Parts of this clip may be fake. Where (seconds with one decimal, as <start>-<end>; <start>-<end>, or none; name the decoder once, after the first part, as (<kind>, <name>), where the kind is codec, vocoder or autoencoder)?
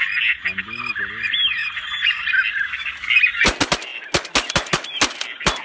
1.6-2.3 (vocoder, BigVGAN v2)